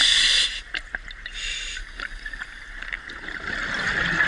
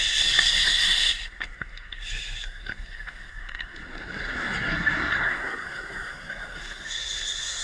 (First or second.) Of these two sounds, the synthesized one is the second